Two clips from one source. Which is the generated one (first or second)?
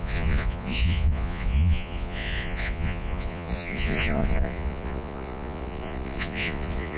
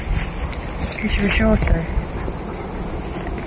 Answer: first